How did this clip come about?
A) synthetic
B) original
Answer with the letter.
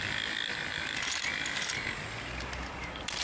B